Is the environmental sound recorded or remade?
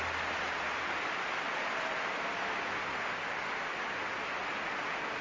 recorded